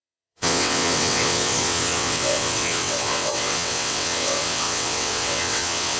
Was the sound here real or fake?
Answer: fake